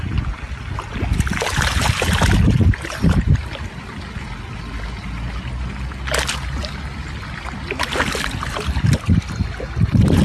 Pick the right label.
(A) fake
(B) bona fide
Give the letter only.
B